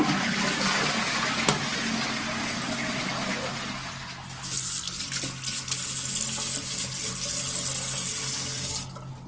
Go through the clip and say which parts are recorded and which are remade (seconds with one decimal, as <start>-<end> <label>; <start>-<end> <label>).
0.0-6.6 recorded; 6.6-7.1 remade; 7.1-9.3 recorded